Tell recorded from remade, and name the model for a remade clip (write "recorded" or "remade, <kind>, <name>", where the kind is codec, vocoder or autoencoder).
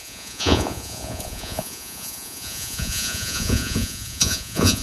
remade, vocoder, Vocos